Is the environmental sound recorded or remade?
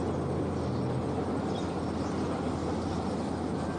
recorded